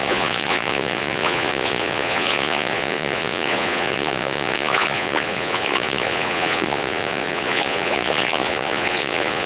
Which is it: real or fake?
fake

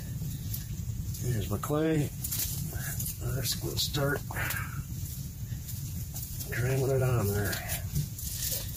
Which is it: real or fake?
fake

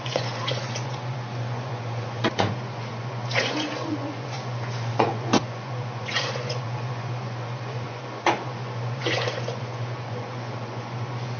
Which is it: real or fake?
fake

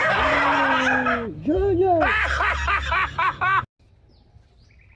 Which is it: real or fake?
real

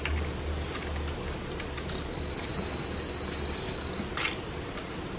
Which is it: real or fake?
real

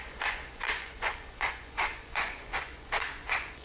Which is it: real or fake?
fake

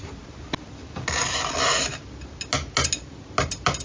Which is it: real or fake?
real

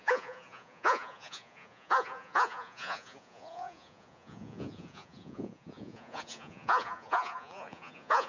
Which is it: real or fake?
fake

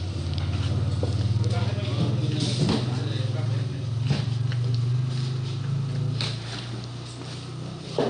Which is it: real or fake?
real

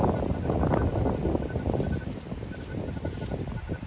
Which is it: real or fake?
real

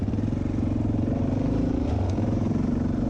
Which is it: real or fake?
real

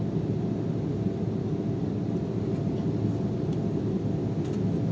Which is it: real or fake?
real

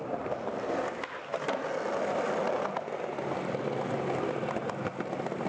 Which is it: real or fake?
real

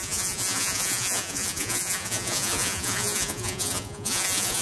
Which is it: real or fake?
fake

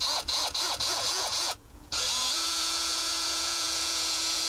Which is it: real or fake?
fake